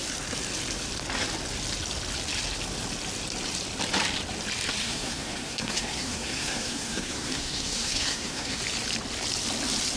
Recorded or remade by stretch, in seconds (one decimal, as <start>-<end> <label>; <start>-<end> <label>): 0.0-4.8 recorded; 4.8-8.6 remade; 8.6-10.0 recorded